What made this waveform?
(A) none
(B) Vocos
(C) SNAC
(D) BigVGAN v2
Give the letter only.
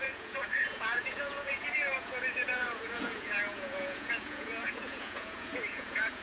B